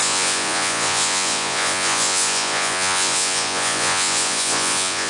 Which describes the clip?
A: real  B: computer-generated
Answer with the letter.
B